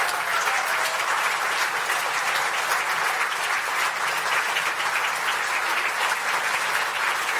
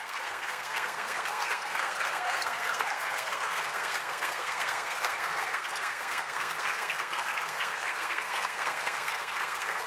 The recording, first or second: first